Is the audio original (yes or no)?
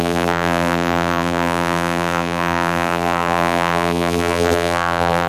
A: no